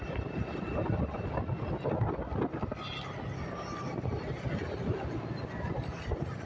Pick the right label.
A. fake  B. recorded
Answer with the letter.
B